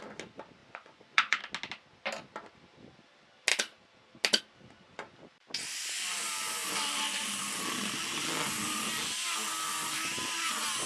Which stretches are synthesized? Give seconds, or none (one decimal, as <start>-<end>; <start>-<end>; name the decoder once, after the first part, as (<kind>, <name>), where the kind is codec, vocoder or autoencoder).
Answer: 0.6-1.4 (vocoder, Vocos)